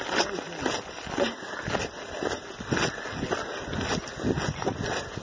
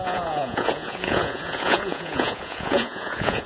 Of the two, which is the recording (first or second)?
first